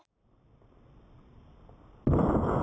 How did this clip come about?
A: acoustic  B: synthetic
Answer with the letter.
A